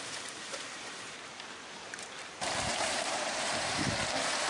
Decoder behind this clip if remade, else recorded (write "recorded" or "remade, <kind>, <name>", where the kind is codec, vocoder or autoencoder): remade, vocoder, BigVGAN v2